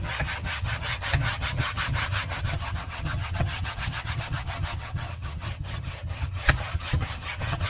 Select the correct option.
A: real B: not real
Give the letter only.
B